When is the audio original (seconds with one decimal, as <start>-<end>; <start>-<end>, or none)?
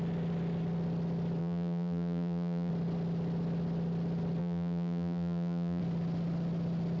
0.0-1.4; 2.7-4.4; 5.8-7.0